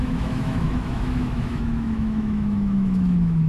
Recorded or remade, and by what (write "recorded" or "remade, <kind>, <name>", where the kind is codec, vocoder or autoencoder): remade, autoencoder, DAC-VAE